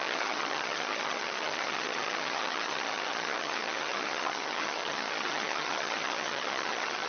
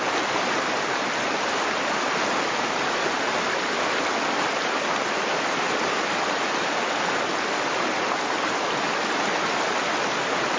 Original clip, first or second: second